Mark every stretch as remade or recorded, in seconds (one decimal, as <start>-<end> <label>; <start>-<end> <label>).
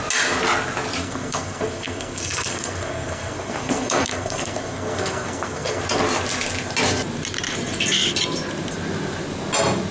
0.0-1.0 recorded; 1.0-5.8 remade; 5.8-9.9 recorded